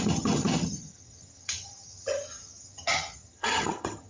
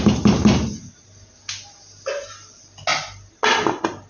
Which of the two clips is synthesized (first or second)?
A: first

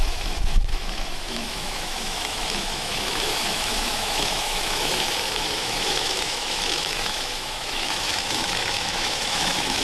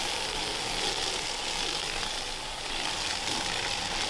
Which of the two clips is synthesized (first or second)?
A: first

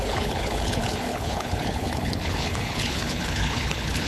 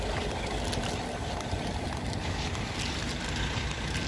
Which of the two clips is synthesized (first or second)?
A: first